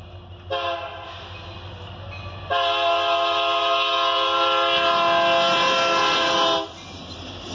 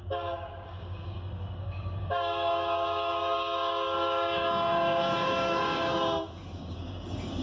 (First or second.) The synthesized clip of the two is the second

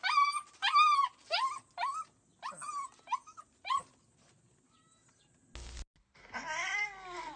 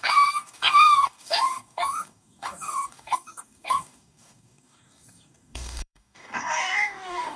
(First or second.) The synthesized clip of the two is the second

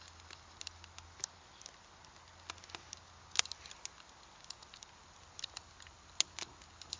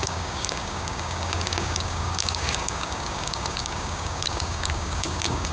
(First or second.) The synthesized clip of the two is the second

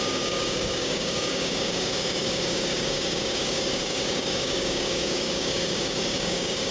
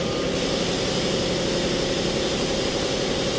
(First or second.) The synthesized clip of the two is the first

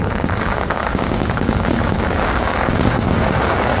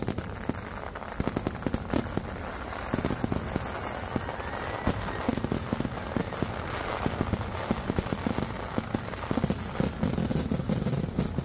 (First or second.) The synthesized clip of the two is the first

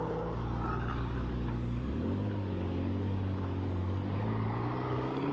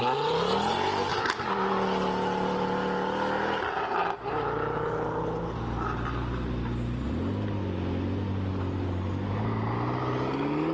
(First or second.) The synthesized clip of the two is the first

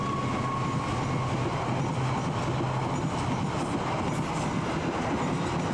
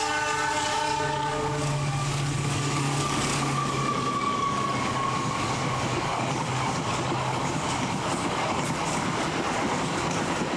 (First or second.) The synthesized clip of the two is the second